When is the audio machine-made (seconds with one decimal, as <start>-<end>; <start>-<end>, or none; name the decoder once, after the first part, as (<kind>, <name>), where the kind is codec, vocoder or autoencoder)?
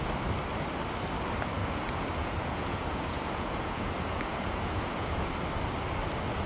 1.6-5.3 (vocoder, Vocos)